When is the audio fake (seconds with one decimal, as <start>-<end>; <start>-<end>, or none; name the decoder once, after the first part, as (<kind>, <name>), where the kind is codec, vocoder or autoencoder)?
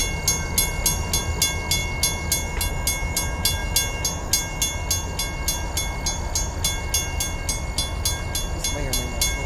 none